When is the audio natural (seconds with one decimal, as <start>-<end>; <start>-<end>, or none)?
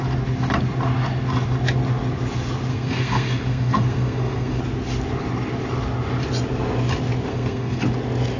0.0-2.7; 4.6-7.3; 7.8-8.4